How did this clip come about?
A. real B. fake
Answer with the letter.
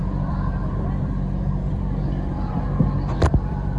B